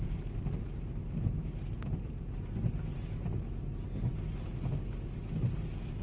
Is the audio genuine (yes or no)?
yes